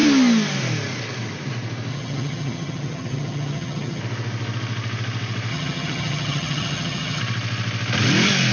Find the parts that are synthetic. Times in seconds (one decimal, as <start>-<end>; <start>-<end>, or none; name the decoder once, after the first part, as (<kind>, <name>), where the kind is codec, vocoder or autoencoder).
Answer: 1.9-4.0 (vocoder, HiFi-GAN); 5.5-7.2